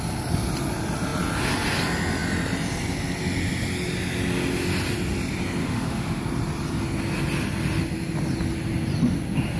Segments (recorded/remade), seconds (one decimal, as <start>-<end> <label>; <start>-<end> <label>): 0.0-5.6 recorded; 5.6-6.2 remade; 6.2-9.6 recorded

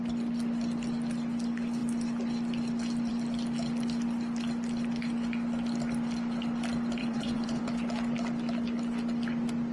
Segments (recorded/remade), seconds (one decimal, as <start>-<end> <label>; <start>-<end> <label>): 0.0-7.0 recorded; 7.0-7.6 remade; 7.6-9.7 recorded

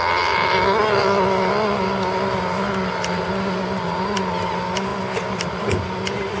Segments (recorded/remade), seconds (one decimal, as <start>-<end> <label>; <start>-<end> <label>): 0.0-6.4 recorded

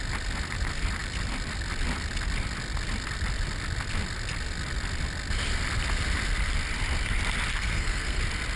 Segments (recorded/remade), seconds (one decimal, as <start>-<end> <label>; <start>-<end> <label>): 0.0-7.5 recorded; 7.5-8.2 remade; 8.2-8.6 recorded